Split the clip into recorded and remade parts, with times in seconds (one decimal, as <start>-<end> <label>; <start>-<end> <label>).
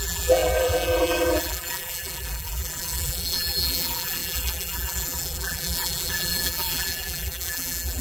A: 0.0-8.0 remade